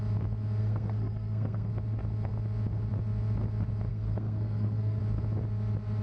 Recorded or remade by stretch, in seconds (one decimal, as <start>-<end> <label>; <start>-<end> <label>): 0.0-0.6 recorded; 0.6-1.7 remade; 1.7-3.9 recorded; 3.9-5.0 remade; 5.0-6.0 recorded